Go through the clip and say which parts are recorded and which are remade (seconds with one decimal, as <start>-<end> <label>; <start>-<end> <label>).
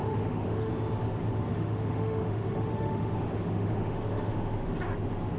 0.0-0.7 remade; 0.7-1.5 recorded; 1.5-4.7 remade; 4.7-5.4 recorded